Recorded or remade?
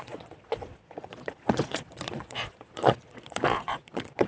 remade